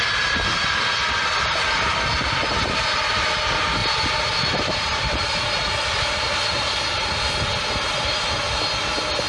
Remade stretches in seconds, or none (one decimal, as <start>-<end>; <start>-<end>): 3.8-5.0